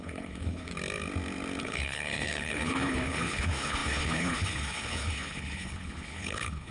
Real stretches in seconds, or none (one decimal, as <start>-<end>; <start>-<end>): 0.7-1.6